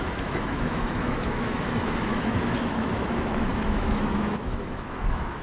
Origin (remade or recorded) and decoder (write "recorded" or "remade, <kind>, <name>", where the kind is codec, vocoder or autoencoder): remade, autoencoder, DAC-VAE